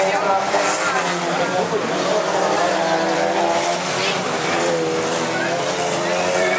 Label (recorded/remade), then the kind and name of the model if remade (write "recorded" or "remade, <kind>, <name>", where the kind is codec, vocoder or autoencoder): remade, vocoder, BigVGAN v2